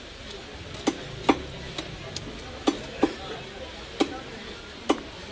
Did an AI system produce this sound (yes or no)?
no